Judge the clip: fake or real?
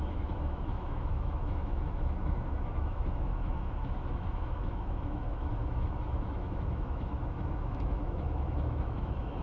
fake